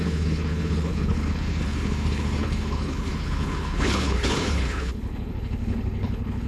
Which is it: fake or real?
fake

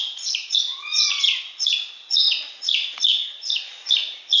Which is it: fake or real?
fake